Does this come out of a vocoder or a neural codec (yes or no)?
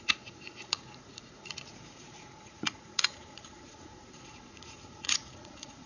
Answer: yes